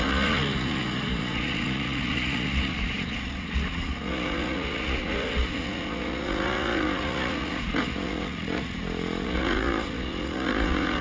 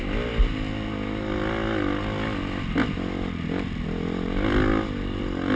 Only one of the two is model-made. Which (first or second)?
first